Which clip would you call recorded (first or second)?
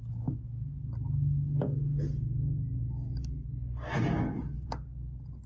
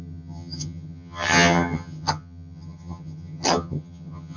first